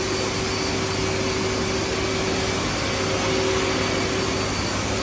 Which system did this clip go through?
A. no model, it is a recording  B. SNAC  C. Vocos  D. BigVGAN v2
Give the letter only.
A